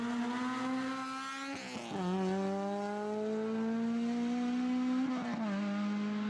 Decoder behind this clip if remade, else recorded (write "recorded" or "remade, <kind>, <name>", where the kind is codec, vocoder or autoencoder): recorded